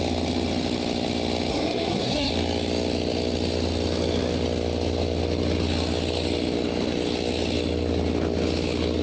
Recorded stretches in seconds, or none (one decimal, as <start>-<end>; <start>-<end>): 0.0-1.5; 2.3-9.0